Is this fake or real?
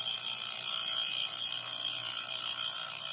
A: fake